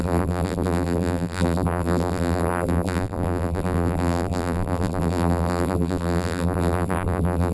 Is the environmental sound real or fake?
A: fake